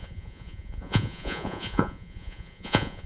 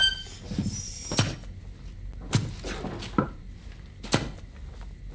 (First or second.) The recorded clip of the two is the second